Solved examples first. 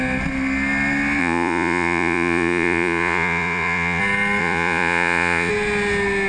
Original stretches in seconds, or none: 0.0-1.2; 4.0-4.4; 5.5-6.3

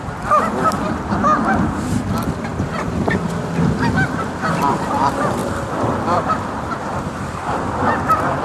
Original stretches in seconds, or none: 0.0-2.5; 3.0-5.4; 7.6-8.4

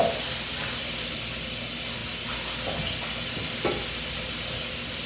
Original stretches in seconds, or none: 0.0-5.1

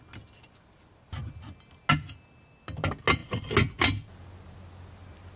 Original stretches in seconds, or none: 0.0-5.4

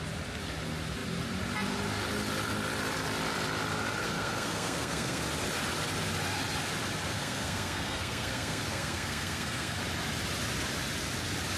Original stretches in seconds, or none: 0.0-4.0; 5.2-7.1; 9.8-11.6

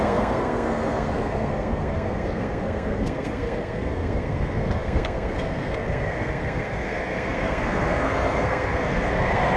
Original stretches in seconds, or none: none